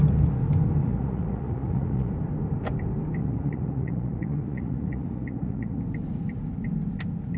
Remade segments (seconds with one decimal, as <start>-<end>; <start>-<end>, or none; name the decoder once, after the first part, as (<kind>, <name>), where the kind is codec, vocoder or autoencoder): 0.8-2.1 (vocoder, Vocos); 3.2-5.8